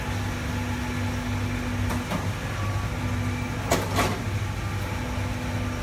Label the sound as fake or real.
real